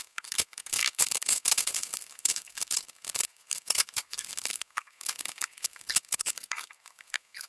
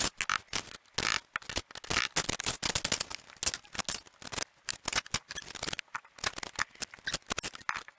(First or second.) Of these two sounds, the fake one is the first